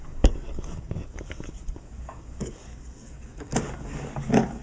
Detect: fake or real fake